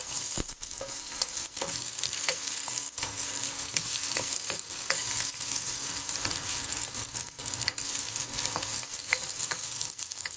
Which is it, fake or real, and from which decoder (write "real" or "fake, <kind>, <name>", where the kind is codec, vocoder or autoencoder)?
fake, codec, SNAC